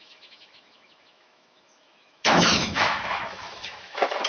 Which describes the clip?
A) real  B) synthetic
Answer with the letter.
B